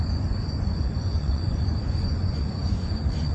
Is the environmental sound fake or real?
fake